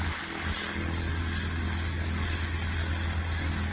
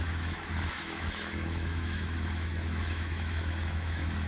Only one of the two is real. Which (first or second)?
first